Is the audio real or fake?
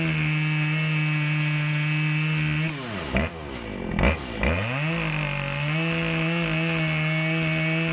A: real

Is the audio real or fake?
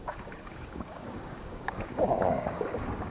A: fake